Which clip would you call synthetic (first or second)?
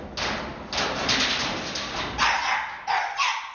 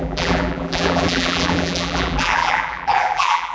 second